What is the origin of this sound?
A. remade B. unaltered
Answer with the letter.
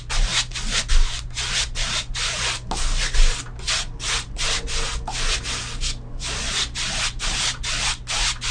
B